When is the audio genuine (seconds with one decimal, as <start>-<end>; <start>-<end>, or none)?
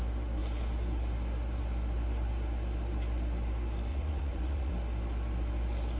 0.0-3.9; 4.7-6.0